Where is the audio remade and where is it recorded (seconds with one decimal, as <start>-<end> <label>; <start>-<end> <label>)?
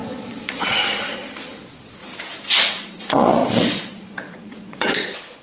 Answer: 0.0-2.1 remade; 2.1-2.7 recorded; 2.7-5.4 remade